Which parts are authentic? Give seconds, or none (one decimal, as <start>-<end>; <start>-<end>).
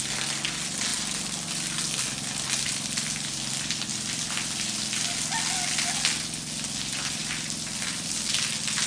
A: 0.0-8.9